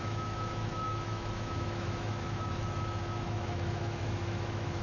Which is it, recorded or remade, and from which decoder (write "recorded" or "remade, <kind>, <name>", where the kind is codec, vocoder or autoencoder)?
remade, autoencoder, DAC-VAE